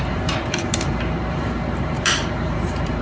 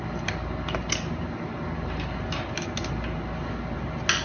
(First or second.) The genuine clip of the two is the second